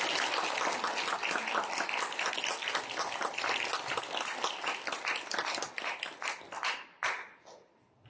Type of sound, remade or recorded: recorded